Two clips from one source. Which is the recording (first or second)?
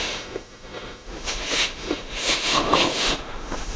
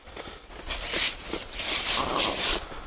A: second